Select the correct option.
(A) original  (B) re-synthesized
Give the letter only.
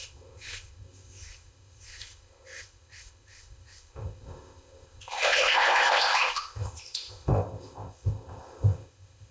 B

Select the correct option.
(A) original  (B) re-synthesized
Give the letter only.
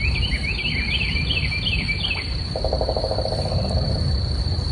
A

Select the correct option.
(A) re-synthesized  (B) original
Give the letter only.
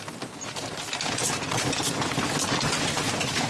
B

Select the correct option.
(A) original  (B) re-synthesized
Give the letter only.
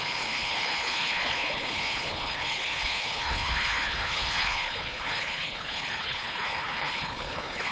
B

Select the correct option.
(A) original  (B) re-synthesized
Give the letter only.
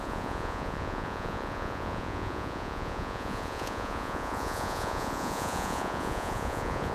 B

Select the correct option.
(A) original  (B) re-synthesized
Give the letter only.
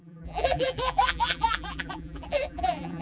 B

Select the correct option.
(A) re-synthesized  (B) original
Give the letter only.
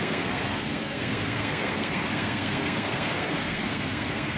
A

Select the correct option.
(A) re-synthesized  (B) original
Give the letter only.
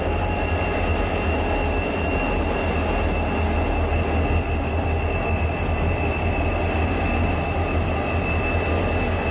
B